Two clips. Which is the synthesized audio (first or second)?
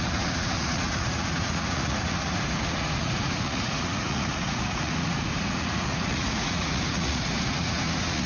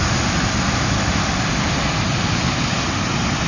first